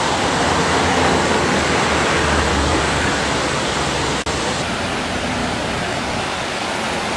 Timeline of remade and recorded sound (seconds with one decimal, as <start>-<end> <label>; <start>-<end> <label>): 0.0-0.9 recorded; 0.9-1.7 remade; 1.7-2.5 recorded; 2.5-3.1 remade; 3.1-5.4 recorded; 5.4-6.7 remade; 6.7-7.2 recorded